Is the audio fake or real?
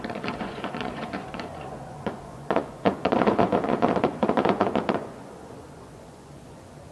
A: fake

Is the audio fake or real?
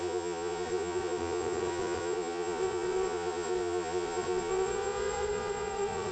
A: fake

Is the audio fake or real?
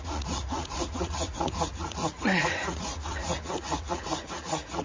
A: fake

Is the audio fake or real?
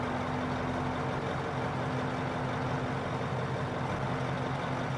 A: real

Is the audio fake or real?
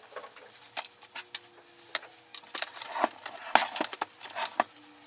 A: real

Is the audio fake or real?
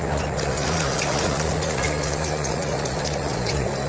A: fake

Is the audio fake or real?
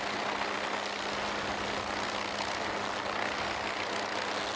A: real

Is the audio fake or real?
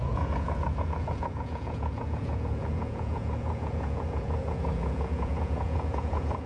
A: fake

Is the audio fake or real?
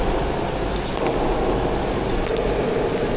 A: real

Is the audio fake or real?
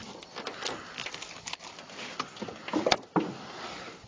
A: real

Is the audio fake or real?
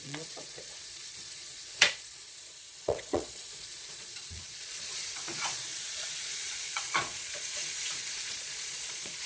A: fake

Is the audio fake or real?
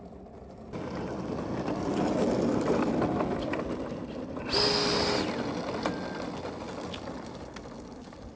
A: real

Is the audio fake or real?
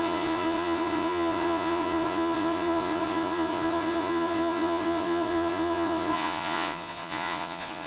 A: fake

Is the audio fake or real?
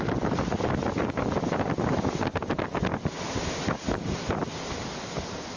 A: real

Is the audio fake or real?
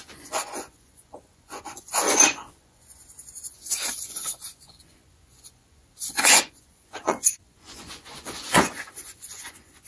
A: fake